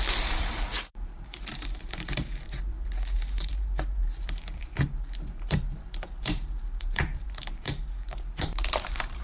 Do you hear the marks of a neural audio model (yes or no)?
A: yes